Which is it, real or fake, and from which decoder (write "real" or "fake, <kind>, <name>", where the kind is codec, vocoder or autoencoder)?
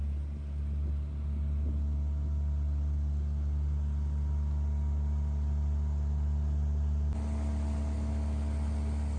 real